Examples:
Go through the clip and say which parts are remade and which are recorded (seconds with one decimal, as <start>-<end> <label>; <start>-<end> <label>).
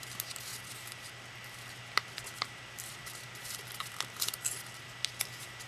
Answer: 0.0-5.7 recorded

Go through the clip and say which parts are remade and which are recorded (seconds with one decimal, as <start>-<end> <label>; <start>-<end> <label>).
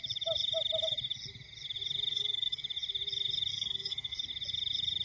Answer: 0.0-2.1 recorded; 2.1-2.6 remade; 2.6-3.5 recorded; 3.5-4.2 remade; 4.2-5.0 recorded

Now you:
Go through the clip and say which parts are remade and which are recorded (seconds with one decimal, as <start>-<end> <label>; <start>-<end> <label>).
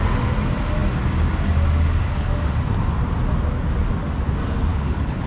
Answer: 0.0-4.7 recorded; 4.7-5.3 remade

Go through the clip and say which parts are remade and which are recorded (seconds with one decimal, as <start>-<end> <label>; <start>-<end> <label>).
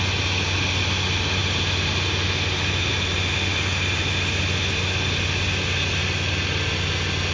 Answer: 0.0-7.3 recorded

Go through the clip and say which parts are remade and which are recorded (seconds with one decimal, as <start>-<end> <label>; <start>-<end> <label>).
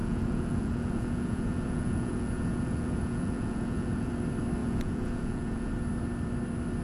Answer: 0.0-4.1 remade; 4.1-4.6 recorded; 4.6-5.7 remade; 5.7-6.8 recorded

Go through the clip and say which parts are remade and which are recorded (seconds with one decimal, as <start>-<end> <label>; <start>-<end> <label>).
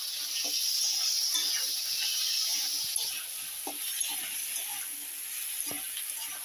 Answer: 0.0-6.4 recorded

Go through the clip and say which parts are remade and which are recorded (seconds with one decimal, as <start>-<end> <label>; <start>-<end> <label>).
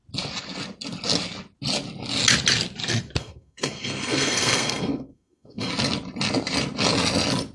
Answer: 0.0-3.2 recorded; 3.2-5.7 remade; 5.7-7.5 recorded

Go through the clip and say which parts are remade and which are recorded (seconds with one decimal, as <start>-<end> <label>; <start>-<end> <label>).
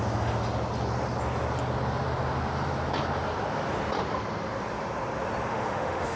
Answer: 0.0-5.5 recorded; 5.5-6.2 remade